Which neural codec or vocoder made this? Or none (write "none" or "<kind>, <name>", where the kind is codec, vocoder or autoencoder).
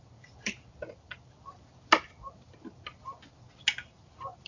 none